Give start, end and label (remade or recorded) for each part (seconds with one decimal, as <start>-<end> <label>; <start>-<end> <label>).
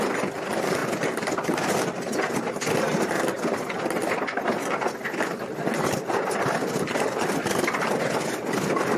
0.0-9.0 recorded